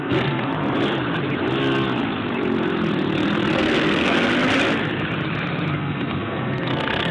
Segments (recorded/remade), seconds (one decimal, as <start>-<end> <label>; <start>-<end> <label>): 0.0-0.5 remade; 0.5-3.5 recorded; 3.5-4.3 remade; 4.3-5.7 recorded; 5.7-7.1 remade